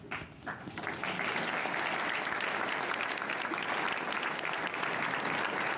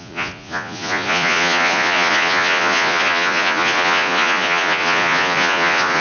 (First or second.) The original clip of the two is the first